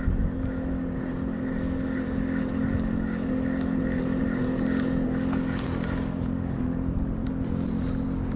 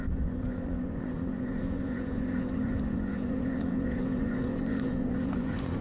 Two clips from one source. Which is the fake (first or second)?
second